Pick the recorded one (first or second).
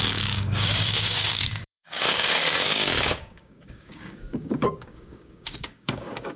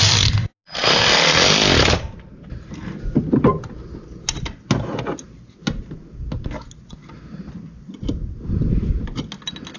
second